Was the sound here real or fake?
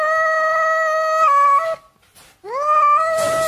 real